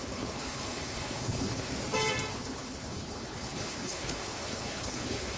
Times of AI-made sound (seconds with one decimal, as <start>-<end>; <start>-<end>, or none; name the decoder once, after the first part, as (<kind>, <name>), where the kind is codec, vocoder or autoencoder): 0.0-1.7 (codec, HILCodec); 2.3-5.4